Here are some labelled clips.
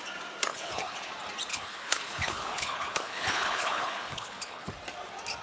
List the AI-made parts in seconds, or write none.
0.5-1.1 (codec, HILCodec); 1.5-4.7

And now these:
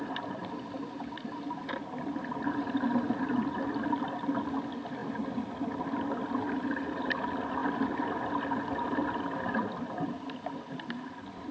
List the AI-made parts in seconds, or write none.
none

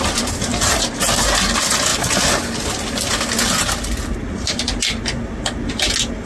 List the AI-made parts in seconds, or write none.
none

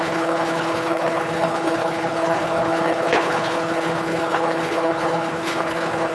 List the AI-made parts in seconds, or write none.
0.0-6.1 (codec, HILCodec)

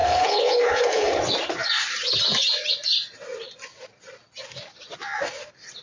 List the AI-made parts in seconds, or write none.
0.0-1.2 (codec, HILCodec)

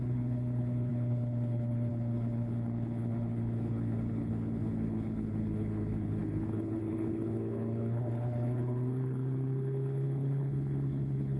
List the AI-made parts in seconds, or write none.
0.0-11.4 (codec, HILCodec)

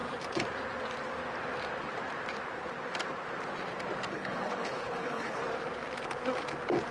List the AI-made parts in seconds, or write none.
4.1-5.4 (codec, HILCodec)